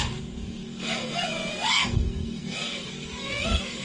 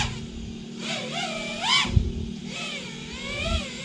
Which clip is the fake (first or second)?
first